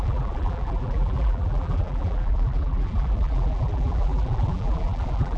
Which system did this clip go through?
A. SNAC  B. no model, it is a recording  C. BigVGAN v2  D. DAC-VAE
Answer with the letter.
C